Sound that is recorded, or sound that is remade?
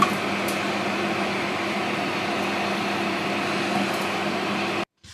recorded